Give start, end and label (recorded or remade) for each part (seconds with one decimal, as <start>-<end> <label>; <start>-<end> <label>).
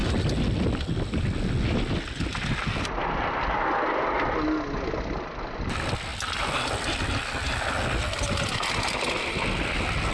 0.0-10.1 recorded